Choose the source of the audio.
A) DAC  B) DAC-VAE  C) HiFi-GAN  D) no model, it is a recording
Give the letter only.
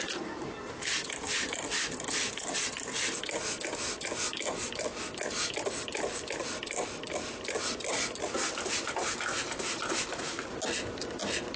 D